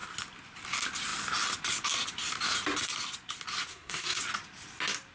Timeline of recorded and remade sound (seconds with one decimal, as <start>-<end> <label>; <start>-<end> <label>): 0.0-3.7 recorded; 3.7-4.2 remade; 4.2-5.1 recorded